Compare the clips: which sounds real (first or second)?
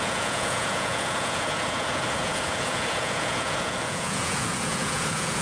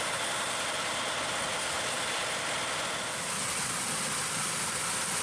second